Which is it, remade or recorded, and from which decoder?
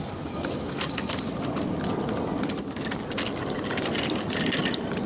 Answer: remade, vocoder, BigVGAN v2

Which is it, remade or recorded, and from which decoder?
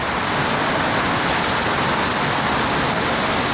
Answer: recorded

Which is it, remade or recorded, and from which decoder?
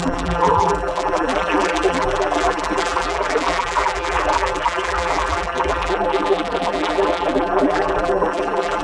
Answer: remade, vocoder, BigVGAN v2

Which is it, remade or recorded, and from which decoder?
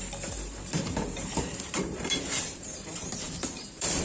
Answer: remade, vocoder, BigVGAN v2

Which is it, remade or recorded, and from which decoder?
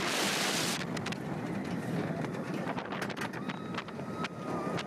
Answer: remade, vocoder, BigVGAN v2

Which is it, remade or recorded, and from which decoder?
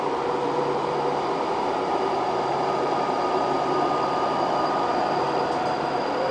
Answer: remade, vocoder, BigVGAN v2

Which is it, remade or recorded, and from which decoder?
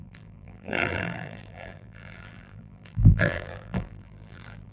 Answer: remade, vocoder, BigVGAN v2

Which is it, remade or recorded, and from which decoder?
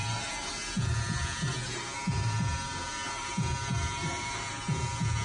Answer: remade, vocoder, BigVGAN v2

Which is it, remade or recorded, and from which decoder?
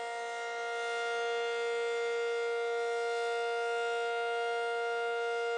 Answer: recorded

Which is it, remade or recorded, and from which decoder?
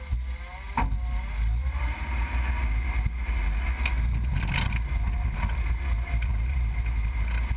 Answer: recorded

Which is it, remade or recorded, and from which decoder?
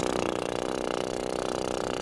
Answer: remade, vocoder, BigVGAN v2